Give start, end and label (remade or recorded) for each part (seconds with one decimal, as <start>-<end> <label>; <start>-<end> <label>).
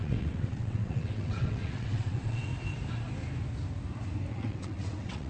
0.0-2.5 remade; 2.5-4.3 recorded; 4.3-5.3 remade